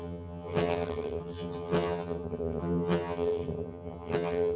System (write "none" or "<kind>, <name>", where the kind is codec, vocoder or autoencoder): vocoder, HiFi-GAN